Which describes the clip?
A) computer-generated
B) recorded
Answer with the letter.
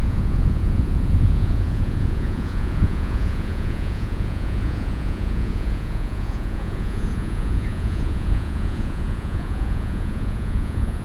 A